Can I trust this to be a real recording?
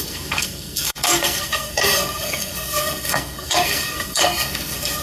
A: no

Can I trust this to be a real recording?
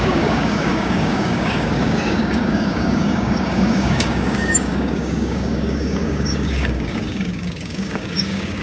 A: no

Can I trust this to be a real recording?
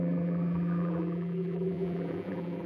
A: no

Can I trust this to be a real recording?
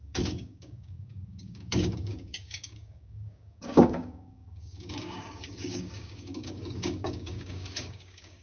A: no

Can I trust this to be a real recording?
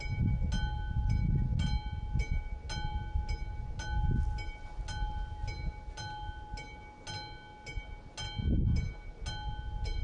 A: yes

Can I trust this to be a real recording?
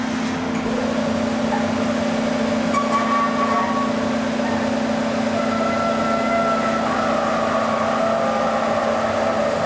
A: yes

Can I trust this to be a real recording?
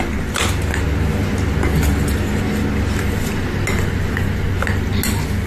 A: yes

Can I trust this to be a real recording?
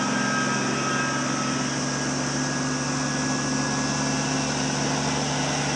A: yes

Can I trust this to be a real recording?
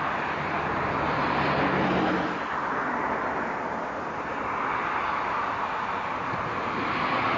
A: yes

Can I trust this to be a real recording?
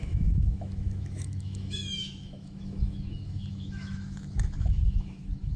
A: no